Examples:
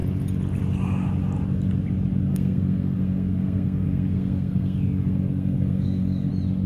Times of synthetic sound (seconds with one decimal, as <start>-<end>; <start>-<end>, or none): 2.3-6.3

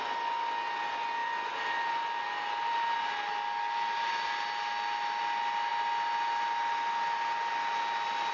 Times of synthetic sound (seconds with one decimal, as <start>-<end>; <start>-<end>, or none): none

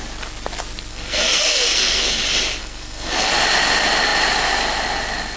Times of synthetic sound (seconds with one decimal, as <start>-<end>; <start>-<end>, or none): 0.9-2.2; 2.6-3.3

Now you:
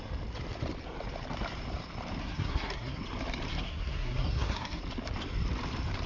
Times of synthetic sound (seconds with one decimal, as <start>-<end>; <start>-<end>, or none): 2.2-3.0; 3.5-4.8

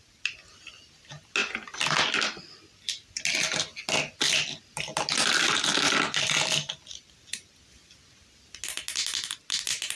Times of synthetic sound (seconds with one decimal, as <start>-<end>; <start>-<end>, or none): none